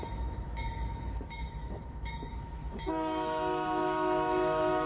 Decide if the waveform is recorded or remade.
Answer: remade